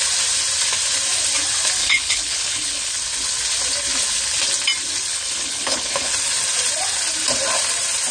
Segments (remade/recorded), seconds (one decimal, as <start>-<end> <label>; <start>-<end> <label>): 0.0-1.8 recorded; 1.8-2.9 remade; 2.9-5.1 recorded; 5.1-6.1 remade; 6.1-8.1 recorded